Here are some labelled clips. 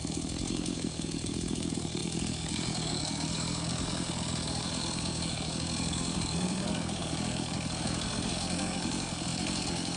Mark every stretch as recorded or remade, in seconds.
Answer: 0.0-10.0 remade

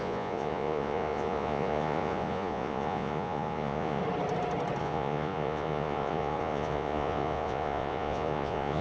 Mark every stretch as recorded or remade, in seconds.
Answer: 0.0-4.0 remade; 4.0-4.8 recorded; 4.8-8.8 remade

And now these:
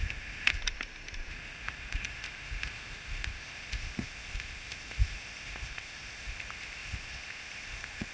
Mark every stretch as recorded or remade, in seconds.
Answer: 0.0-0.6 remade; 0.6-1.3 recorded; 1.3-8.1 remade

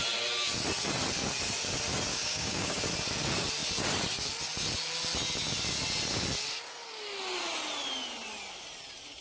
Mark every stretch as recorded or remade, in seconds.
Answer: 0.0-2.1 recorded; 2.1-2.8 remade; 2.8-9.2 recorded